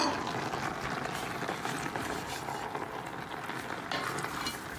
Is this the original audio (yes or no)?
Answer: yes